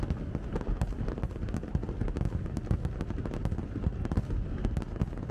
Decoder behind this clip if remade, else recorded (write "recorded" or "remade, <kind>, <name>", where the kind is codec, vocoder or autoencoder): recorded